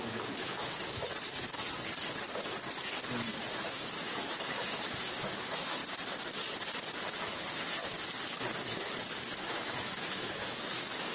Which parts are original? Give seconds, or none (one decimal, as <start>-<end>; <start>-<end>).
1.1-3.6; 5.8-7.1; 7.8-9.4